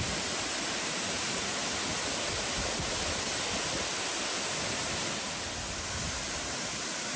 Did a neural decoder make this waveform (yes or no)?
no